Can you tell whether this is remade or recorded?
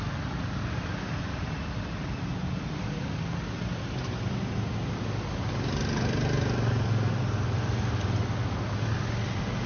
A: recorded